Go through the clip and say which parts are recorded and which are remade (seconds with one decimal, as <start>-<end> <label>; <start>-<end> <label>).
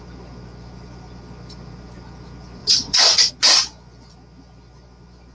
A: 0.0-2.6 recorded; 2.6-3.3 remade; 3.3-5.3 recorded